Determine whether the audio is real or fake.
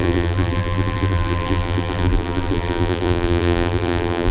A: fake